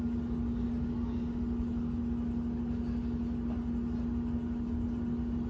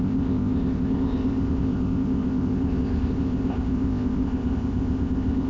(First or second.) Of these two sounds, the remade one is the second